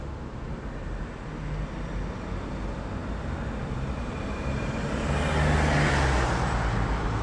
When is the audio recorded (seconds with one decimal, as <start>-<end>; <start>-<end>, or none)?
0.0-3.0; 5.1-7.2